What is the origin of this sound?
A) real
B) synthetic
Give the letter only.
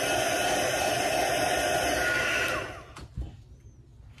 A